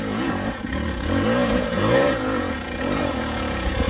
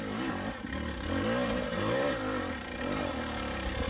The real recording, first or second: second